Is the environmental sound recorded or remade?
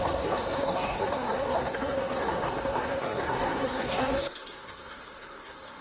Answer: remade